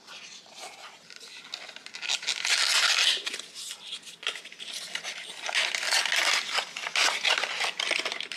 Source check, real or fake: real